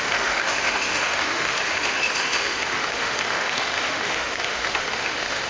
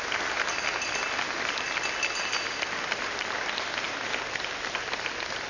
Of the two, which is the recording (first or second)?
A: second